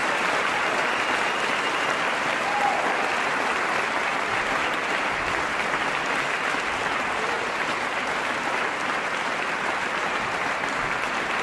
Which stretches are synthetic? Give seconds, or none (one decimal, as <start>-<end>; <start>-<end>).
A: none